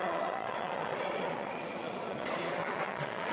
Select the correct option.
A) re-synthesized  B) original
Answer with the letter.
A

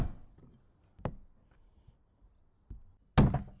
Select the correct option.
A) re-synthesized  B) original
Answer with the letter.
B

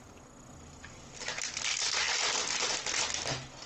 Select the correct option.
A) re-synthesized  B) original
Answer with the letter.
B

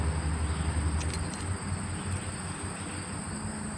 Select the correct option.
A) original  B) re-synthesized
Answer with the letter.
A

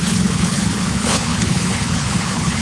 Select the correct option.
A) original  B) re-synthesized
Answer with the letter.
B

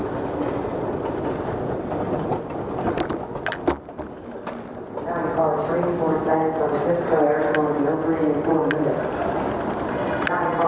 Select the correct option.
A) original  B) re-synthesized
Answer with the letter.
A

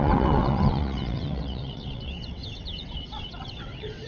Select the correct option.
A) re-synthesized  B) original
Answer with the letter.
A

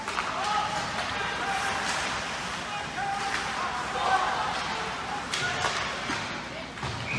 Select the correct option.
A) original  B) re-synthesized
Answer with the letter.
A